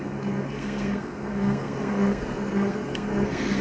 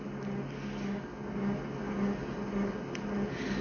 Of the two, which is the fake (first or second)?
first